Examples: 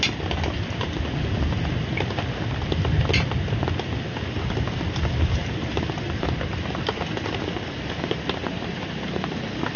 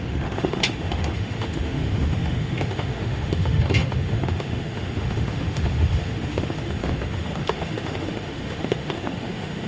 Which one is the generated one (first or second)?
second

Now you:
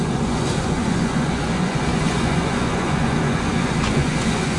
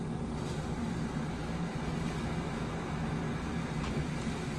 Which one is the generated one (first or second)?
first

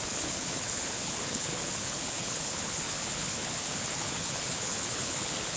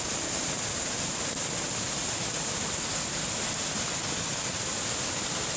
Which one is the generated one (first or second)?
first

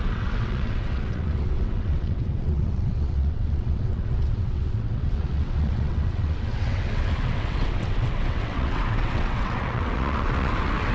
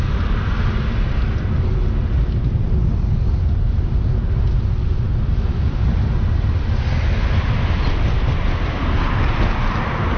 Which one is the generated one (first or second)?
first